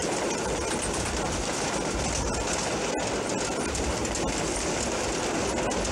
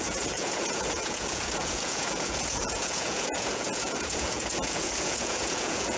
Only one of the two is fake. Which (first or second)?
second